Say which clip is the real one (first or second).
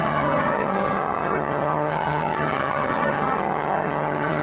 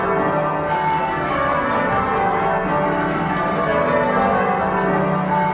second